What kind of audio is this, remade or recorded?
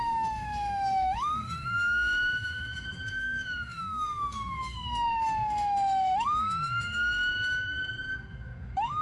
remade